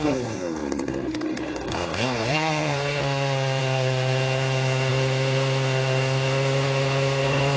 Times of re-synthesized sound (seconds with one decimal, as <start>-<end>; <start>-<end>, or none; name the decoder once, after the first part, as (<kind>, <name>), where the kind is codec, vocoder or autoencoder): 0.0-3.0 (codec, SNAC); 3.6-7.6